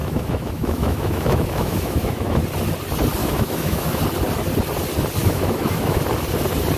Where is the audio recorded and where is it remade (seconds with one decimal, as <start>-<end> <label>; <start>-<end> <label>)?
0.0-2.4 remade; 2.4-3.2 recorded; 3.2-4.0 remade; 4.0-5.2 recorded; 5.2-6.0 remade; 6.0-6.8 recorded